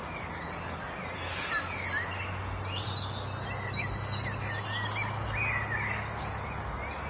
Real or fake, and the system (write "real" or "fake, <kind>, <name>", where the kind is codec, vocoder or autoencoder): real